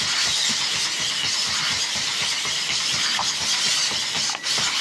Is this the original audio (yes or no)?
yes